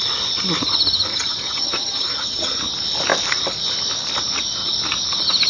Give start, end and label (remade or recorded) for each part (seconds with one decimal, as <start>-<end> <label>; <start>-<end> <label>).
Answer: 0.0-1.1 recorded; 1.1-2.6 remade; 2.6-5.5 recorded